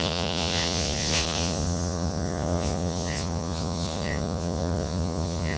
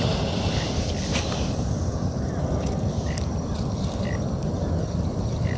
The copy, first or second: first